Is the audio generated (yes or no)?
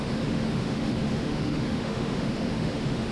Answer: yes